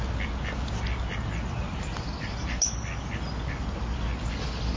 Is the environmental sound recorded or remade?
recorded